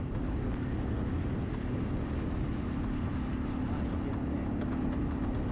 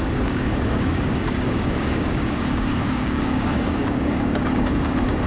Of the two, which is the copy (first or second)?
second